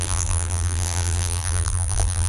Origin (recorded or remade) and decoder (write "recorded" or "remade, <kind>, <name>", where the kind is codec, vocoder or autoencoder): remade, vocoder, BigVGAN v2